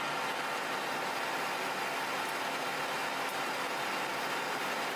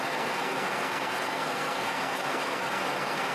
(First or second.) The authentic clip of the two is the first